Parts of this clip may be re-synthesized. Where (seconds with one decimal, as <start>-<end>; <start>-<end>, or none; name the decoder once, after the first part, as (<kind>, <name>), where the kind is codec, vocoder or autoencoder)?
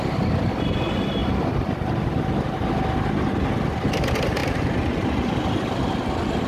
none